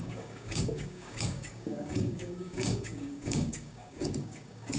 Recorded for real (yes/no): no